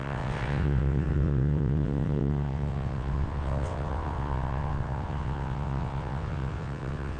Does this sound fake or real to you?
fake